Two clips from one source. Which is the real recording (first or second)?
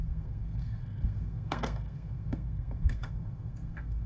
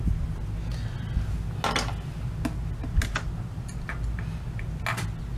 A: second